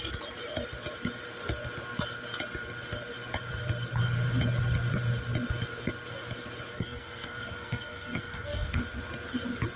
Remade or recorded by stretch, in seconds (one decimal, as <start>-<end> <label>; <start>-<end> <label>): 0.0-6.7 recorded; 6.7-8.8 remade; 8.8-9.8 recorded